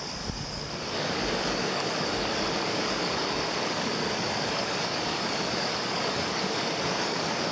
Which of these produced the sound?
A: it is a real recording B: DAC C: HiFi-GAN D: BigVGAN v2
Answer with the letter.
B